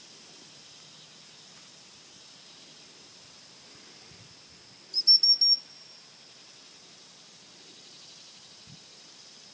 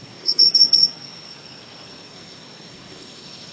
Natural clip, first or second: first